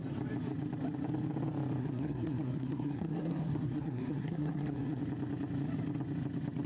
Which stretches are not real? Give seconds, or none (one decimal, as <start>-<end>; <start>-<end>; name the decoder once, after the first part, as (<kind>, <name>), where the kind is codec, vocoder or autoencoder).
1.8-5.0 (codec, SNAC)

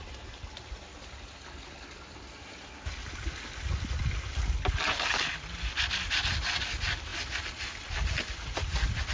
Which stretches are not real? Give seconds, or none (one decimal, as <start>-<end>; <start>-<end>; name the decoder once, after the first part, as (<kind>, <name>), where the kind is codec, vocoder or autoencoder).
none

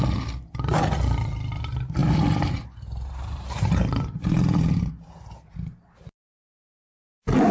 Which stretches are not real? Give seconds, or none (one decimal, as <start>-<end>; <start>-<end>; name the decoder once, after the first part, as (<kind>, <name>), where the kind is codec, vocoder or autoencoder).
2.0-4.9 (vocoder, BigVGAN v2)